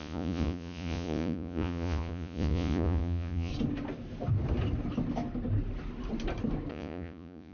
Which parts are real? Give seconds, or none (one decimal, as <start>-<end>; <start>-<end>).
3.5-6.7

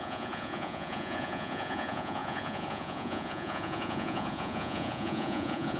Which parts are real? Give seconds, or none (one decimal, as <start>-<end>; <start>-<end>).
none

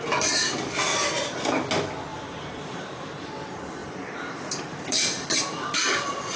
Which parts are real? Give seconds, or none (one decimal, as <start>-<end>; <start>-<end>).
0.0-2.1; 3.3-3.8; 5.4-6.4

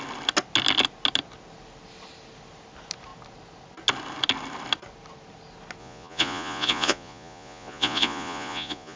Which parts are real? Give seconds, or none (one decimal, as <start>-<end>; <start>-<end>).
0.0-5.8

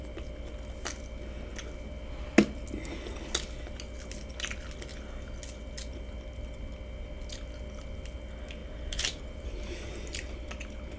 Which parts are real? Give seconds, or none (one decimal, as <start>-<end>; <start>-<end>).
0.0-8.6; 9.9-11.0

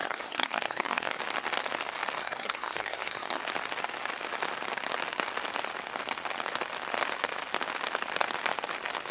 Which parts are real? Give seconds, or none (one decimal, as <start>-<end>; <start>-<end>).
1.2-2.2; 3.4-9.1

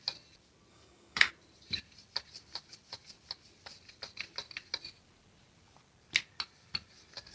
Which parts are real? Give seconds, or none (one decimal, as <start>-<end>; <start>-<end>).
0.0-0.7; 1.3-7.3

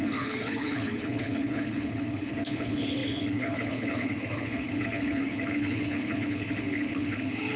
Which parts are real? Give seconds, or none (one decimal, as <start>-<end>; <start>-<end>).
none